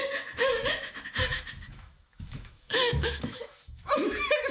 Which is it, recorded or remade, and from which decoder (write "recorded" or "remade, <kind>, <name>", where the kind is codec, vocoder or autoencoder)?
remade, autoencoder, DAC-VAE